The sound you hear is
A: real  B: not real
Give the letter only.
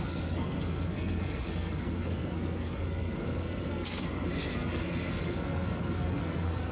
B